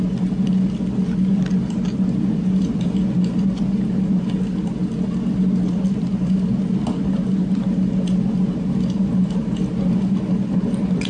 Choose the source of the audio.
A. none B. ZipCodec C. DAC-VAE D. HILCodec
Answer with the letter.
A